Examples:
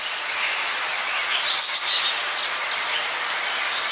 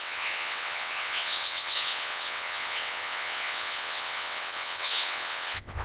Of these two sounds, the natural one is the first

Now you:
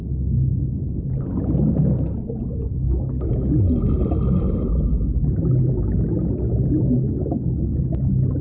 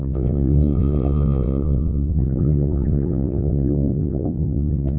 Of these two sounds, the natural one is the first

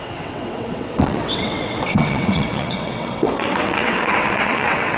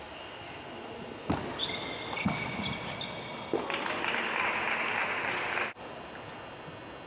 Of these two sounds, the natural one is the second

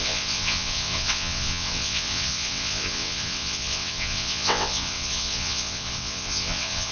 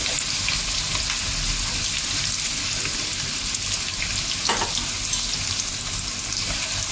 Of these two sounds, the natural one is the second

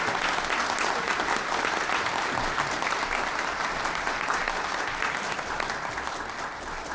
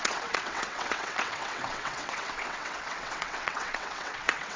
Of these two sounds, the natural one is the first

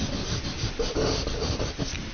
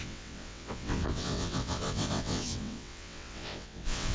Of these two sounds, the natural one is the first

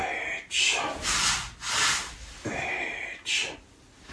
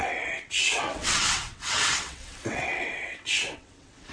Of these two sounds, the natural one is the first